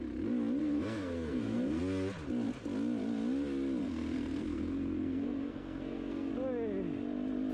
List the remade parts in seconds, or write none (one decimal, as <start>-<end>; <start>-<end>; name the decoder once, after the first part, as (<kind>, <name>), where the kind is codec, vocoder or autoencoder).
0.6-1.8 (codec, SNAC); 3.8-6.3